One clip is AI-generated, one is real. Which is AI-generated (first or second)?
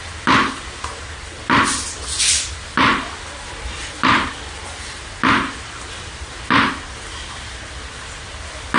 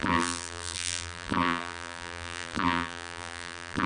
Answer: second